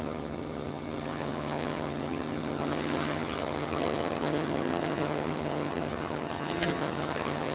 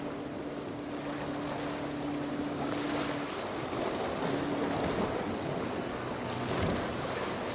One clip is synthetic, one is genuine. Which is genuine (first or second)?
second